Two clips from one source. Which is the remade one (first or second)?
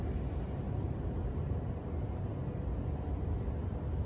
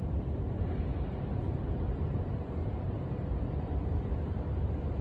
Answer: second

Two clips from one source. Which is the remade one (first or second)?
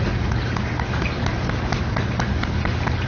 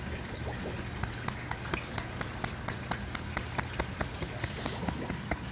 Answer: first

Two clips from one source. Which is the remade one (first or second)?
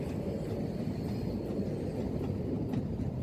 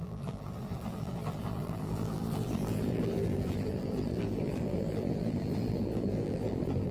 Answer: second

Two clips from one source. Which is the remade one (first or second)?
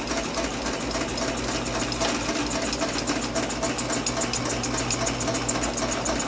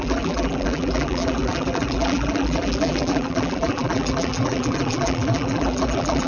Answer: second